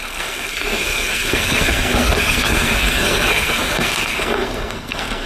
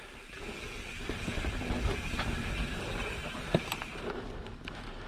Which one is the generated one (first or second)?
first